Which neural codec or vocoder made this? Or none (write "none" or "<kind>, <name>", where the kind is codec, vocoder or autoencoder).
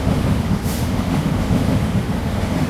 autoencoder, DAC-VAE